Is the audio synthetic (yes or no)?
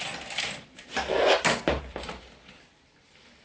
no